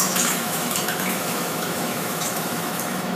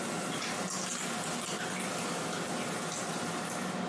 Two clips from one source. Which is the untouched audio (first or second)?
second